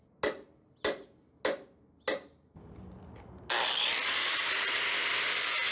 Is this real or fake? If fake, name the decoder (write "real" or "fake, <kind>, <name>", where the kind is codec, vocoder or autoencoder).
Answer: real